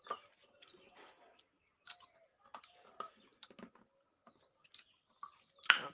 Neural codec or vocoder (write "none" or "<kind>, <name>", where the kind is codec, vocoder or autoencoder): none